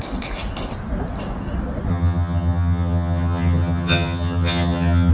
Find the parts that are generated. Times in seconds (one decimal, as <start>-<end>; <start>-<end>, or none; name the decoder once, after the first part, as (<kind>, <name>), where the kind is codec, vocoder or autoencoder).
1.9-5.1 (vocoder, HiFi-GAN)